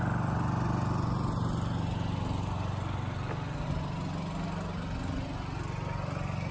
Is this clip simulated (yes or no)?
no